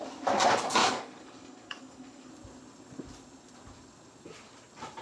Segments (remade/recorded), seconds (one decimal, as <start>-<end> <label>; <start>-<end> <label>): 0.0-0.8 recorded; 0.8-2.3 remade; 2.3-5.0 recorded

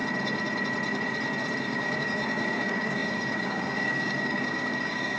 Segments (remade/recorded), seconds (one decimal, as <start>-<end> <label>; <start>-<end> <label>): 0.0-1.6 recorded; 1.6-5.2 remade

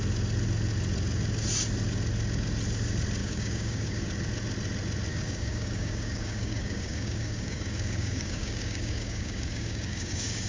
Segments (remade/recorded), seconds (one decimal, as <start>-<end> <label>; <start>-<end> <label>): 0.0-3.2 recorded; 3.2-4.0 remade; 4.0-5.1 recorded; 5.1-10.5 remade

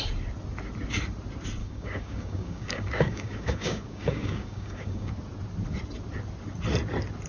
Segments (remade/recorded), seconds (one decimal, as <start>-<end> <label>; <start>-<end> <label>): 0.0-1.6 recorded; 1.6-5.1 remade; 5.1-7.3 recorded

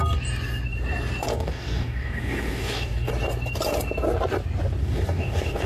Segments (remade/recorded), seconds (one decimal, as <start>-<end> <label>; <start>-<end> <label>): 0.0-1.3 recorded; 1.3-3.1 remade; 3.1-4.8 recorded; 4.8-5.7 remade

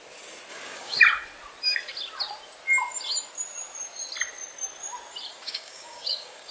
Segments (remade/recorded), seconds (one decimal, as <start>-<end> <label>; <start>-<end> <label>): 0.0-0.5 recorded; 0.5-1.0 remade; 1.0-5.3 recorded; 5.3-6.5 remade

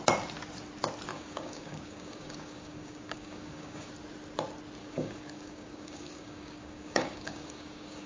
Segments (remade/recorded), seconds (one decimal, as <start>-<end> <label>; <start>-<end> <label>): 0.0-1.1 recorded; 1.1-3.9 remade; 3.9-4.8 recorded; 4.8-8.1 remade

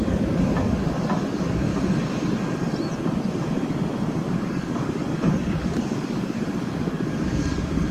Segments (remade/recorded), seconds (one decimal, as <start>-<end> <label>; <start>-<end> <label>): 0.0-1.7 remade; 1.7-4.3 recorded; 4.3-7.9 remade